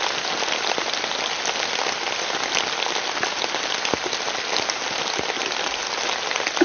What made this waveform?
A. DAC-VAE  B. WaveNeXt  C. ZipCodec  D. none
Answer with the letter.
D